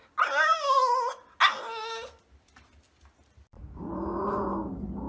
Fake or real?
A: real